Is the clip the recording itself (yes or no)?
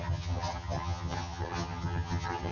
no